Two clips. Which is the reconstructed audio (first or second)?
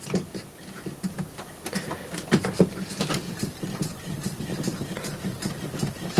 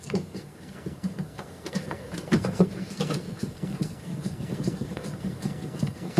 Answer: second